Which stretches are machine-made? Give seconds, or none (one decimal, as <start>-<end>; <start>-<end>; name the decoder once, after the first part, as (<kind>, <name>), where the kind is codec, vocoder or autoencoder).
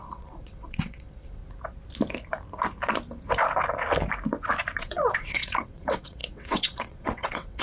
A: 0.0-1.4 (vocoder, WaveNeXt); 4.8-7.6